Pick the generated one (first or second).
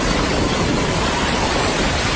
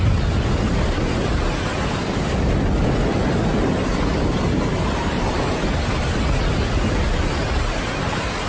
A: first